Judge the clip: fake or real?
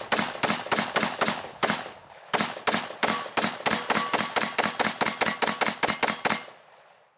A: real